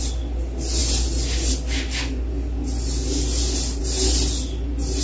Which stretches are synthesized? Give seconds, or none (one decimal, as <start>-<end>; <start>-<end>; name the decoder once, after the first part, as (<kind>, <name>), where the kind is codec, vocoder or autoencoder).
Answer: none